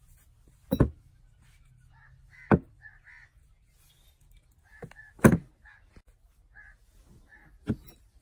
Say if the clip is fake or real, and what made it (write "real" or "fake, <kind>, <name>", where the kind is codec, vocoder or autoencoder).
real